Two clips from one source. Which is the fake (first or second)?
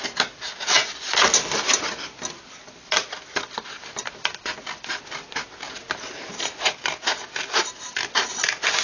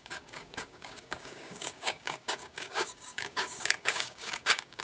second